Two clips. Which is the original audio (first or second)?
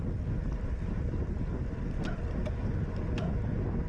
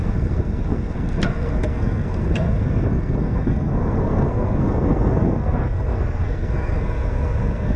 first